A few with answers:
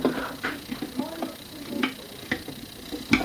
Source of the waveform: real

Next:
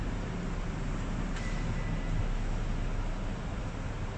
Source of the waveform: real